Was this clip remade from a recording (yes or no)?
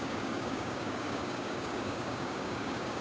yes